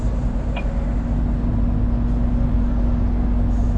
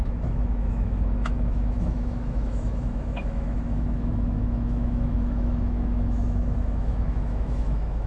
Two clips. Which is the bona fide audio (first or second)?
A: first